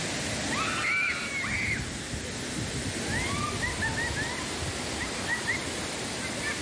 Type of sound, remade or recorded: recorded